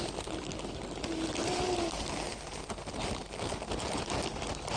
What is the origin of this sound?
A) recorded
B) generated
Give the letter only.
A